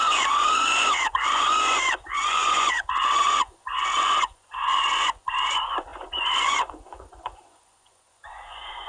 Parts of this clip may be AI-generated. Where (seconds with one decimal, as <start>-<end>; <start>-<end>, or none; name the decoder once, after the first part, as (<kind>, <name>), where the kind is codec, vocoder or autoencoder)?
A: 0.0-8.9 (vocoder, Vocos)